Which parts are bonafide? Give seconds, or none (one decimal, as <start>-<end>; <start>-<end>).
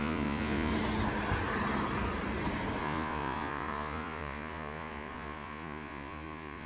0.7-2.8